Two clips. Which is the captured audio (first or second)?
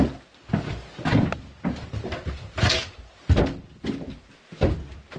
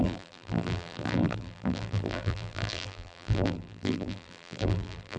first